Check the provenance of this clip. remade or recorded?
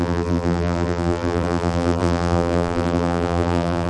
remade